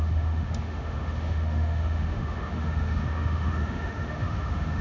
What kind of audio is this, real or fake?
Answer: fake